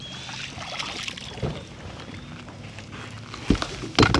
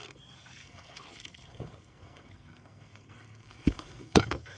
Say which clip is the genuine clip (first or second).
first